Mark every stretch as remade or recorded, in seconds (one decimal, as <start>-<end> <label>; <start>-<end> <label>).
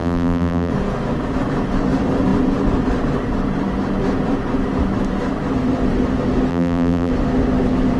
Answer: 0.0-0.7 remade; 0.7-6.5 recorded; 6.5-7.1 remade; 7.1-8.0 recorded